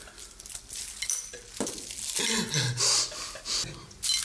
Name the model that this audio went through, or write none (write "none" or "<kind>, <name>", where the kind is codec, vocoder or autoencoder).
none